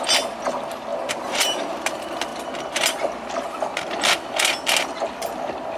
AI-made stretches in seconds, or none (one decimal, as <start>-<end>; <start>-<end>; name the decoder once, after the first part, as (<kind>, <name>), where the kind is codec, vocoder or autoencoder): 0.9-1.7 (vocoder, BigVGAN v2)